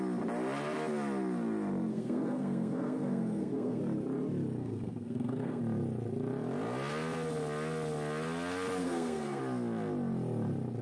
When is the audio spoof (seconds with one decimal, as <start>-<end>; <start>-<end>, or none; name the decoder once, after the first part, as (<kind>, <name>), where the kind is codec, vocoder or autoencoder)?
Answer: 1.9-3.8 (codec, SNAC); 4.6-5.6; 8.8-9.4